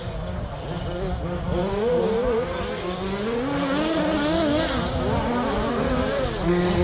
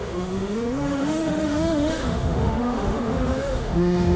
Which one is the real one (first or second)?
first